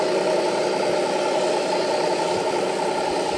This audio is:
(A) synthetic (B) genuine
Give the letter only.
B